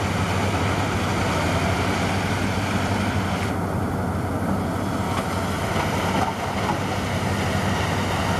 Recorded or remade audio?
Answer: recorded